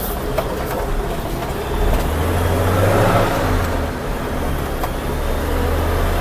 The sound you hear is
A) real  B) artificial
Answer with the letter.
A